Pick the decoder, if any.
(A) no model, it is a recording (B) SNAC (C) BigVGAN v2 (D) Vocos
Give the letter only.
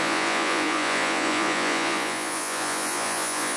D